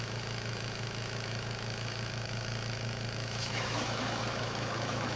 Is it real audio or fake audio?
fake